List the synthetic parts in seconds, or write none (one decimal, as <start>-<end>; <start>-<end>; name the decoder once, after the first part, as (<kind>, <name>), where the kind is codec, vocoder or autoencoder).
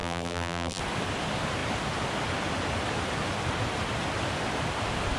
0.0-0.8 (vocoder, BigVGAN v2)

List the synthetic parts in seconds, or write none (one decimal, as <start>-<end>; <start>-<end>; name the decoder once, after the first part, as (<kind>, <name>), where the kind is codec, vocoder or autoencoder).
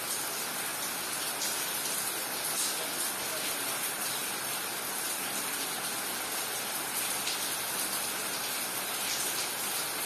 0.7-2.3 (vocoder, BigVGAN v2)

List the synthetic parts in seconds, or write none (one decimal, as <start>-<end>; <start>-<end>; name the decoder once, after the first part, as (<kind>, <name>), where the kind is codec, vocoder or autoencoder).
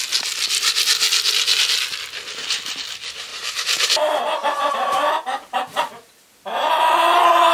3.3-4.7 (vocoder, BigVGAN v2)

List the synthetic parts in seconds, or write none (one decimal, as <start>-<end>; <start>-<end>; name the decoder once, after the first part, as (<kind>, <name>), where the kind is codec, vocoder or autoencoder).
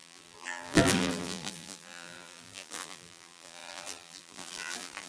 0.0-5.1 (vocoder, BigVGAN v2)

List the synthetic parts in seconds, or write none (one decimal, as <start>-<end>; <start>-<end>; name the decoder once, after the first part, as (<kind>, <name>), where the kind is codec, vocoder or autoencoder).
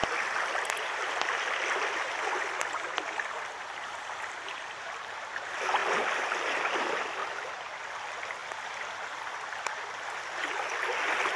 0.0-4.4 (vocoder, BigVGAN v2); 5.8-6.8; 8.4-10.4